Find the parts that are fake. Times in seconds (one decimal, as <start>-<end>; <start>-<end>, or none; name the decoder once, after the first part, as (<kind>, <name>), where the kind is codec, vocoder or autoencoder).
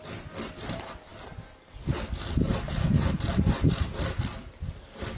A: none